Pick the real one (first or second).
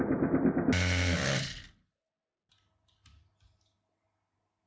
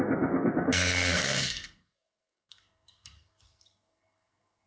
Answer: first